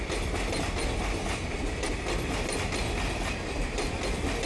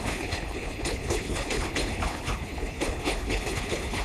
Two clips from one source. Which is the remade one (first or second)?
second